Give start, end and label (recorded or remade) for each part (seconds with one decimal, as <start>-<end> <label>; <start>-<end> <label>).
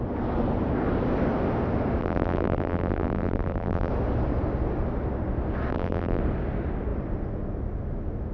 0.0-2.0 recorded; 2.0-3.9 remade; 3.9-5.7 recorded; 5.7-6.2 remade; 6.2-8.3 recorded